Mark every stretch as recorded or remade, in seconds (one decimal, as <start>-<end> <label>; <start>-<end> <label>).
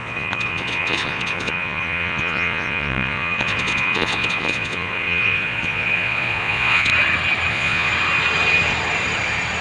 0.0-6.9 remade; 6.9-7.5 recorded; 7.5-7.9 remade; 7.9-9.6 recorded